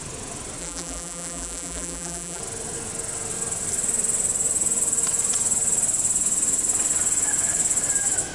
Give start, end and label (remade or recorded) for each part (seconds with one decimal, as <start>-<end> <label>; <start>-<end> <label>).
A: 0.0-0.6 recorded; 0.6-2.4 remade; 2.4-8.3 recorded